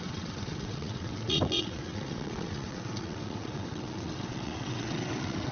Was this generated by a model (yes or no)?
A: yes